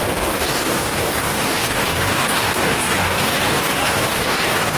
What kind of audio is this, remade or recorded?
remade